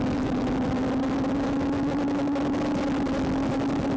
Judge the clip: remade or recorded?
recorded